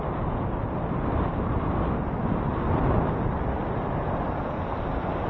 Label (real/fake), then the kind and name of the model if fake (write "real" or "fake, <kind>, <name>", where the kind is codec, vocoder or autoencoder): real